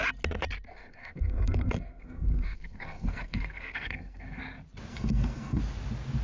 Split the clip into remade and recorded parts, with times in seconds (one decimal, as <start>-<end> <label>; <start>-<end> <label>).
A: 0.0-0.7 recorded; 0.7-4.4 remade; 4.4-4.9 recorded; 4.9-5.6 remade; 5.6-6.2 recorded